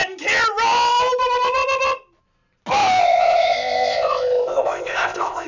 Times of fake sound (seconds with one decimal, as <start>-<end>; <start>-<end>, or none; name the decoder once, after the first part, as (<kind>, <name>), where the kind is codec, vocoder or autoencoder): 3.0-5.5 (codec, ZipCodec)